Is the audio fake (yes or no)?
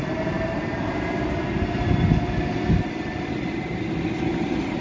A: no